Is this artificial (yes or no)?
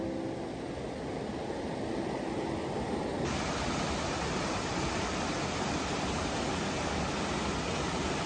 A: no